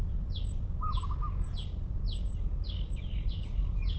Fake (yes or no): no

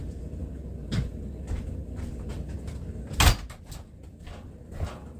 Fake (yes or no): no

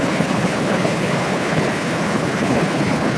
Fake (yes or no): yes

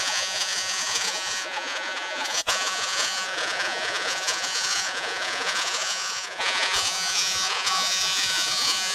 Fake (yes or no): yes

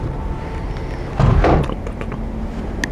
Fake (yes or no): no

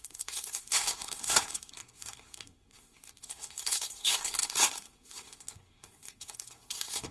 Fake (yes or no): yes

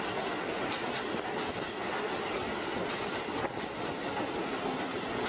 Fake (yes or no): no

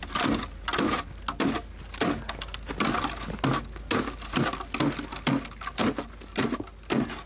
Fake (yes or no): no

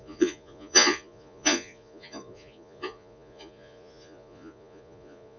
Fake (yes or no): yes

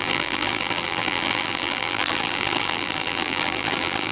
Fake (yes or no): yes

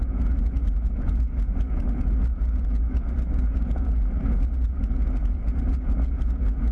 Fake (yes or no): yes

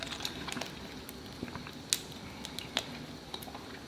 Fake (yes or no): no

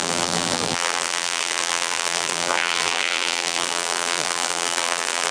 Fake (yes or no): yes